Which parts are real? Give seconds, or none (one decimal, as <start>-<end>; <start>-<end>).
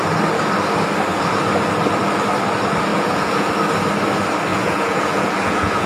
0.0-2.9; 3.5-4.5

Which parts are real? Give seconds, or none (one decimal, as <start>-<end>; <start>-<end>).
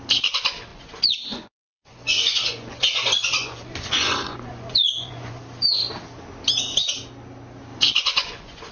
0.0-0.7; 5.3-7.7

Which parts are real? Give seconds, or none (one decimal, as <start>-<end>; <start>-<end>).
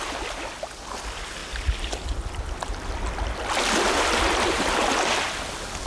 0.0-5.9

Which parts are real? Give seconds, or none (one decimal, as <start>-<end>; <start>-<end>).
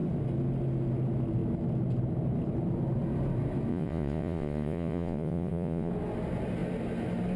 0.0-3.7; 5.9-7.4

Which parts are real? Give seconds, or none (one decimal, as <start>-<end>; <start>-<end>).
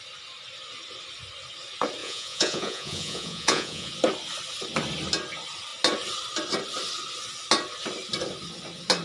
0.0-2.0; 3.9-9.0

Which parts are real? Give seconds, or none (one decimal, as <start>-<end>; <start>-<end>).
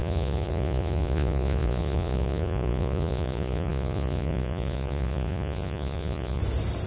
6.4-6.9